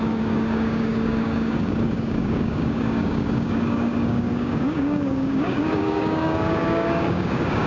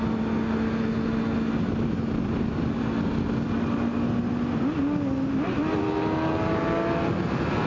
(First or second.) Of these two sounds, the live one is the second